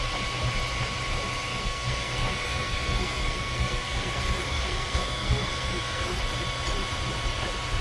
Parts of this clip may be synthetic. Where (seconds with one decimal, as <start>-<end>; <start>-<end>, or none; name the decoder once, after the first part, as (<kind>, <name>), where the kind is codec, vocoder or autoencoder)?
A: 1.5-6.2 (codec, SNAC)